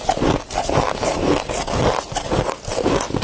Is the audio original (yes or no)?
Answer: yes